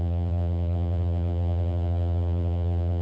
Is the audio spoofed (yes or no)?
yes